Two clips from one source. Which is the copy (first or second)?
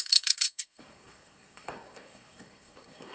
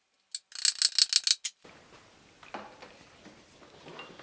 first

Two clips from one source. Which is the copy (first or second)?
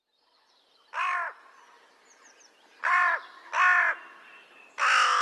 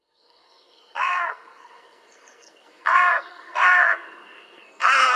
second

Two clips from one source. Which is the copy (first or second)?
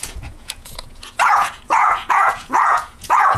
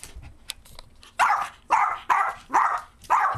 first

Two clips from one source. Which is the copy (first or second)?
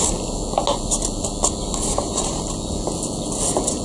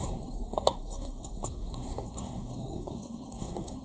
second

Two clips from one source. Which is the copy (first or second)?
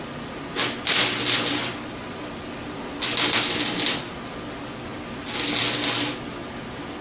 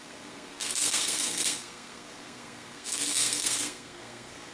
second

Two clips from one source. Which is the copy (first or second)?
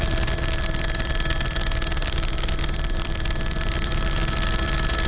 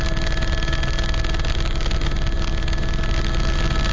first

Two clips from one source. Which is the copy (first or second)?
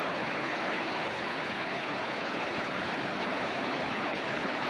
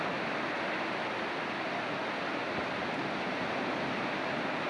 first